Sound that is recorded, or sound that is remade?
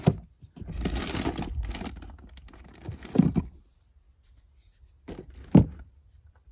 recorded